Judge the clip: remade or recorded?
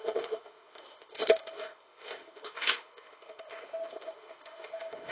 remade